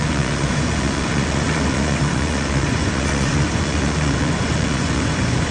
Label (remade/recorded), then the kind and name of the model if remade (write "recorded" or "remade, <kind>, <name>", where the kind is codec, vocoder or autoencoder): remade, vocoder, Vocos